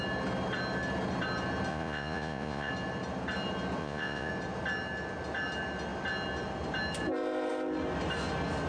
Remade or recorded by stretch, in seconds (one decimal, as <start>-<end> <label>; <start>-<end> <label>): 0.0-1.7 recorded; 1.7-2.7 remade; 2.7-3.8 recorded; 3.8-4.3 remade; 4.3-8.7 recorded